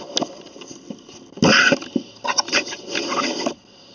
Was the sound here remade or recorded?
recorded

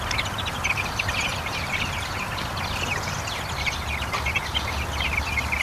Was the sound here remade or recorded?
recorded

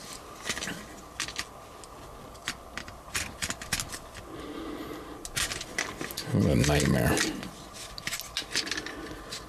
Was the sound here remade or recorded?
recorded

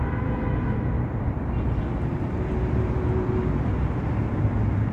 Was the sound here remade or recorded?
recorded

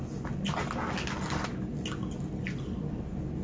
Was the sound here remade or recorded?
recorded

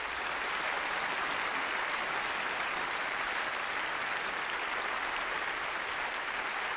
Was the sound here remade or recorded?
recorded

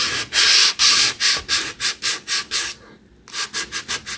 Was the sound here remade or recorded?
recorded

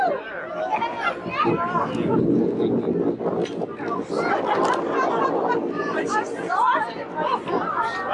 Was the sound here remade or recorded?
recorded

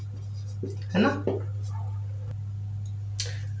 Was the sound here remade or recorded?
recorded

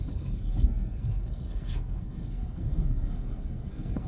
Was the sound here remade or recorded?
remade